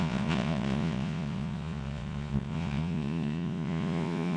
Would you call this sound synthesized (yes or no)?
yes